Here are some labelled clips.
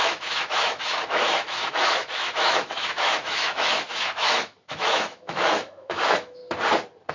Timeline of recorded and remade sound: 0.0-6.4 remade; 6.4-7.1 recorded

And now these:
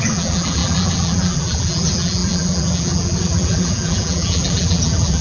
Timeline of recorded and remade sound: 0.0-5.2 remade

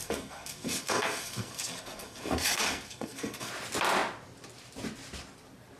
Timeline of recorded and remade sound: 0.0-3.5 remade; 3.5-5.8 recorded

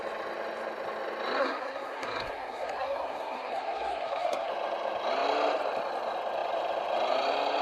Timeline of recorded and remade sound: 0.0-1.4 recorded; 1.4-4.5 remade; 4.5-7.6 recorded

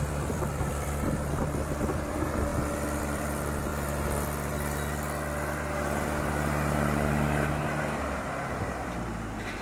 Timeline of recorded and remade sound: 0.0-2.5 remade; 2.5-3.0 recorded; 3.0-3.7 remade; 3.7-8.2 recorded; 8.2-9.6 remade

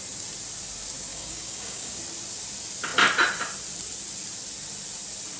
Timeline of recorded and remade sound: 0.0-1.1 recorded; 1.1-2.0 remade; 2.0-5.4 recorded

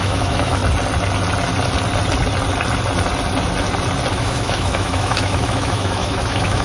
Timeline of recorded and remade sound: 0.0-0.6 remade; 0.6-4.1 recorded; 4.1-6.6 remade

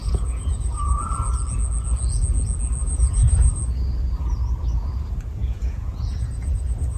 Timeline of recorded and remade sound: 0.0-1.0 remade; 1.0-2.8 recorded; 2.8-3.6 remade; 3.6-5.4 recorded; 5.4-7.0 remade